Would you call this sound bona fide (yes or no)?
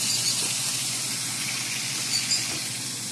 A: no